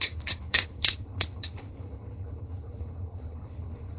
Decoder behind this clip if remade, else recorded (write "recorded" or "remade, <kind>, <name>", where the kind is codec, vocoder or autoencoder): remade, codec, HILCodec